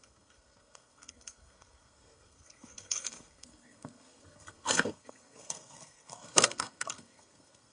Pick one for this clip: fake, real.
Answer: fake